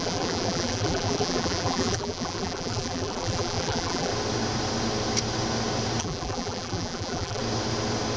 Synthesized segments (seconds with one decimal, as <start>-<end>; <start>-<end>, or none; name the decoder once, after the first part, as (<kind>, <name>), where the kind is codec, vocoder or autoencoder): 0.0-4.1 (vocoder, BigVGAN v2); 6.0-7.4